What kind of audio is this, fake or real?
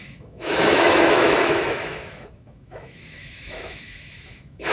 fake